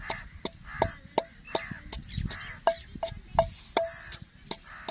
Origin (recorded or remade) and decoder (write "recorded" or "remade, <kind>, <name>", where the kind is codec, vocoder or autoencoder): recorded